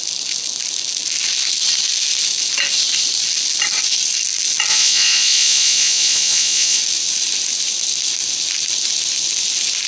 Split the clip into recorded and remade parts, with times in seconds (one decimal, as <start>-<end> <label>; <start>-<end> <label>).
0.0-4.7 recorded; 4.7-6.8 remade; 6.8-9.9 recorded